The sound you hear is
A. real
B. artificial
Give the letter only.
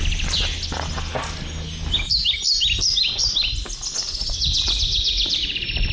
A